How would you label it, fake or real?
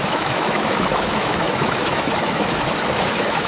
fake